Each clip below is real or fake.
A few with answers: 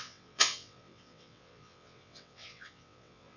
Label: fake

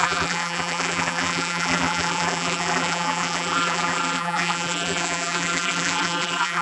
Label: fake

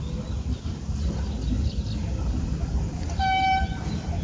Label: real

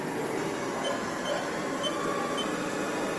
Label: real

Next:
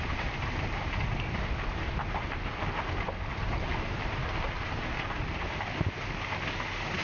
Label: real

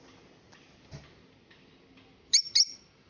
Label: real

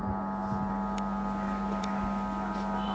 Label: real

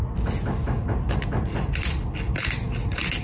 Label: real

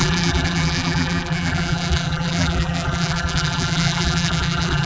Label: fake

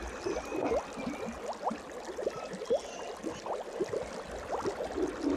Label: real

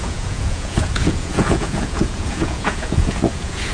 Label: fake